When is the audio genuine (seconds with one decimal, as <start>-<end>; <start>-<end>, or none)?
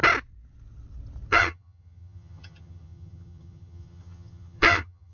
0.0-1.3